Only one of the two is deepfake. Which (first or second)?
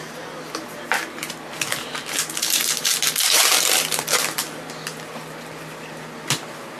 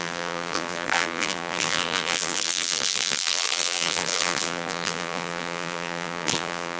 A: second